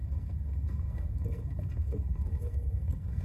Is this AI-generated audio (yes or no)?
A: yes